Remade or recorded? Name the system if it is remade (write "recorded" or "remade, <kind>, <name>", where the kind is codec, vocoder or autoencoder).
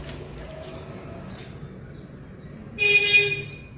recorded